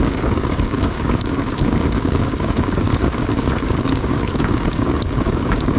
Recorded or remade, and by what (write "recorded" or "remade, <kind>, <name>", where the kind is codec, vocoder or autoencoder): remade, codec, DAC